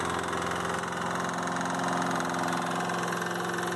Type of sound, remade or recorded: recorded